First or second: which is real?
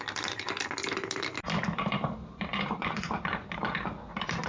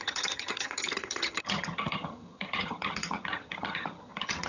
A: first